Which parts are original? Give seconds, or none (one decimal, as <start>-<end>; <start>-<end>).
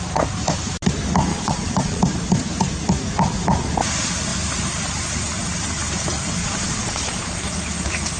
0.0-1.3; 2.0-6.4; 7.5-8.2